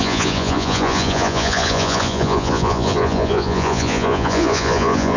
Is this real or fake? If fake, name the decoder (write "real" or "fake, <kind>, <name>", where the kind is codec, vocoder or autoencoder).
fake, vocoder, Vocos